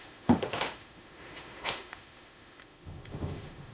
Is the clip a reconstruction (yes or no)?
yes